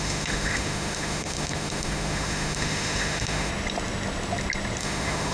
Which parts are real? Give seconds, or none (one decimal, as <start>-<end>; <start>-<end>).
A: 3.5-4.8